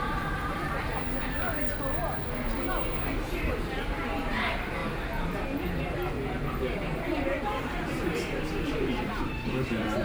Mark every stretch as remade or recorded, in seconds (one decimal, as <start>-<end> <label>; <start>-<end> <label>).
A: 0.0-1.5 remade; 1.5-3.1 recorded; 3.1-4.8 remade; 4.8-6.1 recorded; 6.1-10.0 remade